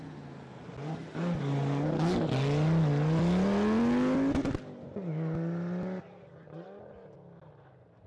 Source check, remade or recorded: recorded